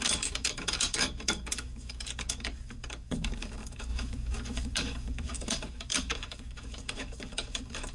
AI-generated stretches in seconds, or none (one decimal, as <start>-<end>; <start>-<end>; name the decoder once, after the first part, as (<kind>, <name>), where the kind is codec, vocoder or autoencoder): 0.0-7.9 (codec, DAC)